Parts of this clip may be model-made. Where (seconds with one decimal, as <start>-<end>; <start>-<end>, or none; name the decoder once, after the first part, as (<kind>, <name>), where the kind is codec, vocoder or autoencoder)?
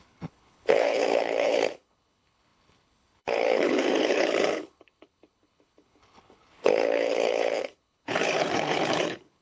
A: 0.0-9.4 (codec, HILCodec)